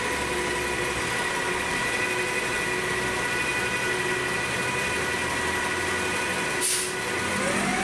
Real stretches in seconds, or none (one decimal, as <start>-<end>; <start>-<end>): 0.0-7.8